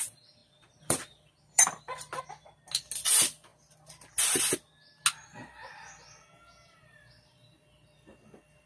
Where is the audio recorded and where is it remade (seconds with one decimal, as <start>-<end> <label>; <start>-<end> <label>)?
0.0-0.4 recorded; 0.4-2.2 remade; 2.2-3.5 recorded; 3.5-4.5 remade; 4.5-8.7 recorded

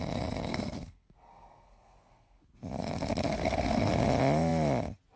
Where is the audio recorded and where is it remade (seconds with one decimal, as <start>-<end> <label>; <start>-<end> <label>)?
0.0-0.5 recorded; 0.5-2.5 remade; 2.5-3.3 recorded; 3.3-4.0 remade; 4.0-5.2 recorded

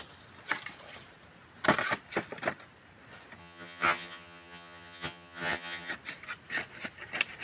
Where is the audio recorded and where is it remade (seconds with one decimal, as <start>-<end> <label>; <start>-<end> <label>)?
0.0-3.4 recorded; 3.4-5.9 remade; 5.9-7.4 recorded

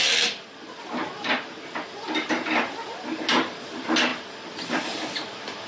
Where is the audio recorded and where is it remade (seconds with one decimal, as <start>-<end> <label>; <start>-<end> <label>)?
0.0-5.7 recorded

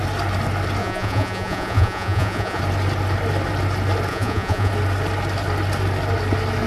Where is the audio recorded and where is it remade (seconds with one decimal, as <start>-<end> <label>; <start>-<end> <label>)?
0.0-0.8 recorded; 0.8-2.6 remade; 2.6-4.1 recorded; 4.1-4.7 remade; 4.7-6.7 recorded

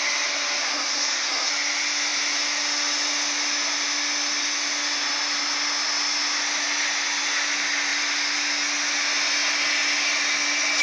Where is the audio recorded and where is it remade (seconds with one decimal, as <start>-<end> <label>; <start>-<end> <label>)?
0.0-0.6 recorded; 0.6-1.5 remade; 1.5-10.8 recorded

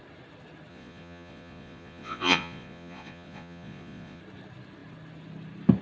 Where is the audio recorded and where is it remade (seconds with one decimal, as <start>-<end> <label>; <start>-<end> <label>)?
0.0-0.7 recorded; 0.7-4.2 remade; 4.2-5.8 recorded